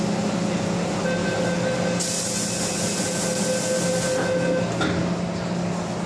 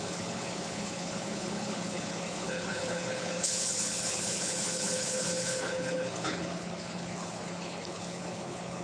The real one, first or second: first